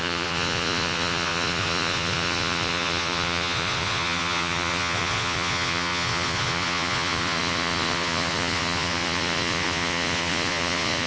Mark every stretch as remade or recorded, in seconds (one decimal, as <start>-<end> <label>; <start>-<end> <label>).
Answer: 0.0-11.1 remade

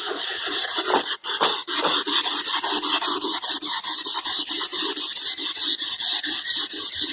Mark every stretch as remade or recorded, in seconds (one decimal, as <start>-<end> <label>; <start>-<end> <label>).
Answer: 0.0-7.1 recorded